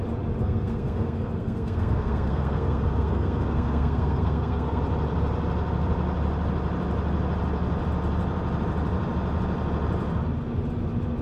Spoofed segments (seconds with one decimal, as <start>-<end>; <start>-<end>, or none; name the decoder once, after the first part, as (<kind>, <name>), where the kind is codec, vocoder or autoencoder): 0.4-4.8 (codec, SNAC)